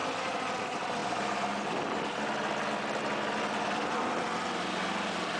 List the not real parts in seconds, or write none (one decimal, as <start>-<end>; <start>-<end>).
none